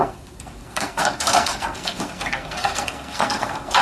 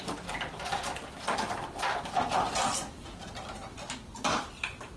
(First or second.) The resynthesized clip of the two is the first